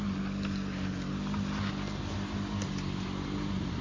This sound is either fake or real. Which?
real